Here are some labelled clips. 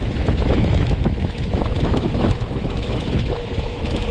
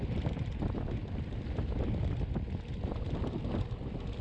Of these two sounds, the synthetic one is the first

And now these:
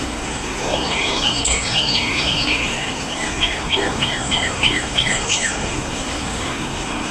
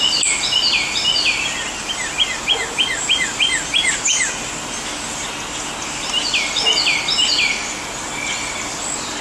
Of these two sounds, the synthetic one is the first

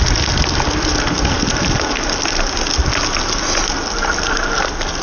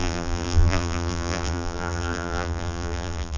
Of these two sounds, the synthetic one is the second